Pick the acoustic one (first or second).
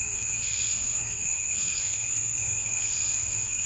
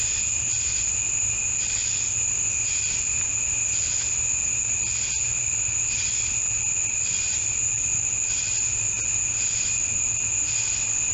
second